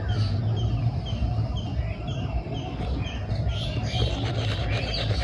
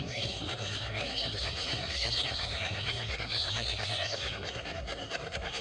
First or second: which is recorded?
first